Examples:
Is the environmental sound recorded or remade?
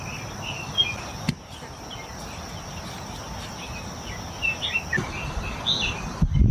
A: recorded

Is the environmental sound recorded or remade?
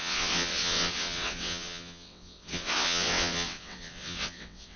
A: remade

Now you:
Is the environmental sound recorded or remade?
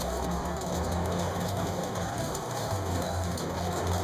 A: remade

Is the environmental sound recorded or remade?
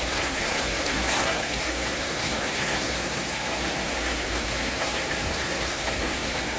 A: remade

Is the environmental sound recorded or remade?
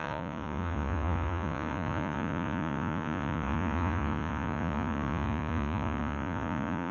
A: remade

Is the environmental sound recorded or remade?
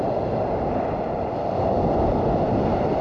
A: recorded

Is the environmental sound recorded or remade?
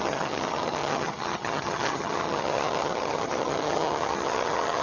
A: remade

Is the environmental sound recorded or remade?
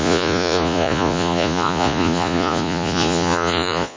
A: remade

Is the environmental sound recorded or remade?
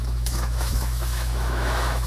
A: remade